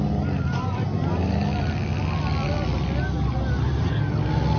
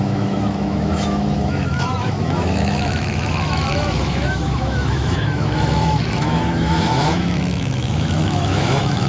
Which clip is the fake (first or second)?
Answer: second